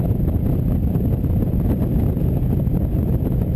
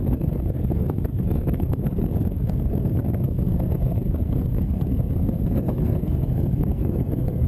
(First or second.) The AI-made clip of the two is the second